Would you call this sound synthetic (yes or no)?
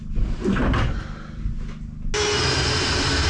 no